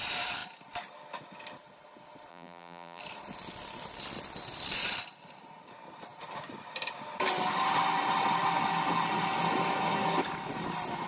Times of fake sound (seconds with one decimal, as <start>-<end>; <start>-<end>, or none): 2.3-3.0